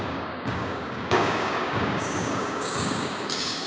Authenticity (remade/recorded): remade